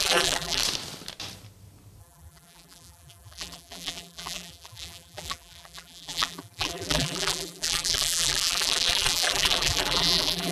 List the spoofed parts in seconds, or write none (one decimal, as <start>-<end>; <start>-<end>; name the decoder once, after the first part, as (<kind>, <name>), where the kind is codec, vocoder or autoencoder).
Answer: 0.0-0.6 (vocoder, BigVGAN v2); 2.0-10.5